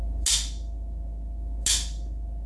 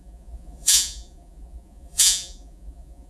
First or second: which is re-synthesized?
second